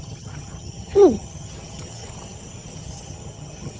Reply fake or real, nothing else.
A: fake